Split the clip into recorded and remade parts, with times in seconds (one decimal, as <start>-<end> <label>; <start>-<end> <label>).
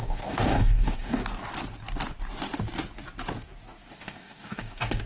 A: 0.0-1.2 remade; 1.2-3.9 recorded; 3.9-5.1 remade